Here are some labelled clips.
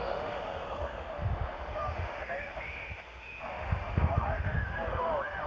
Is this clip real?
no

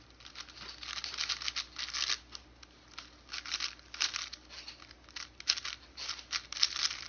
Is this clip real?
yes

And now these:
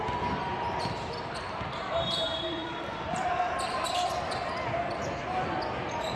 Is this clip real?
yes